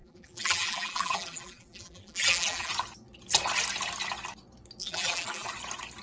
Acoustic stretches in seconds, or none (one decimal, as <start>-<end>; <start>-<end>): 2.7-4.8; 5.5-6.0